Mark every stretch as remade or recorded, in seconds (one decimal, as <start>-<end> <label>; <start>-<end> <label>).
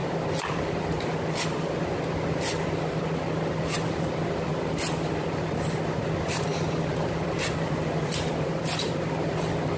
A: 0.0-9.8 recorded